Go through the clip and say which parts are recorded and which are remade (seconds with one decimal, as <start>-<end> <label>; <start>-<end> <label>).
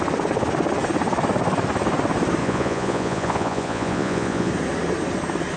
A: 0.0-2.4 recorded; 2.4-4.5 remade; 4.5-5.6 recorded